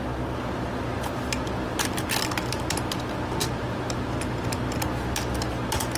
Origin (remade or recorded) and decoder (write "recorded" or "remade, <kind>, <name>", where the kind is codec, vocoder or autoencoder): recorded